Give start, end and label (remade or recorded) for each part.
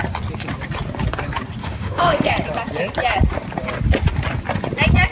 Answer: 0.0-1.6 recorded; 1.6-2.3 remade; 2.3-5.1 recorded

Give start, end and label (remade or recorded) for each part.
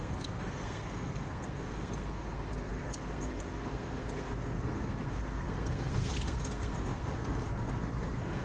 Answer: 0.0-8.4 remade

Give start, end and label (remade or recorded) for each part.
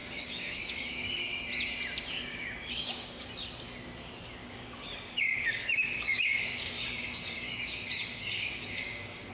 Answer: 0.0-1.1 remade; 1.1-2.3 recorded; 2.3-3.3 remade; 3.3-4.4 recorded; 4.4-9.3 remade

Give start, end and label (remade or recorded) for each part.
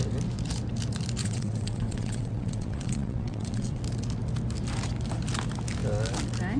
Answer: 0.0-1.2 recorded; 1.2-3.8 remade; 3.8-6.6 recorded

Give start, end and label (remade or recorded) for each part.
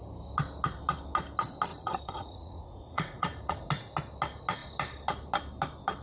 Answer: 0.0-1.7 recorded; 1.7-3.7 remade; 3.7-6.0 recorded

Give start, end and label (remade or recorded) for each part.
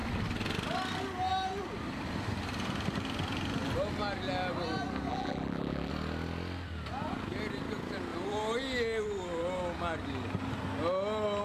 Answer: 0.0-5.1 recorded; 5.1-5.9 remade; 5.9-11.4 recorded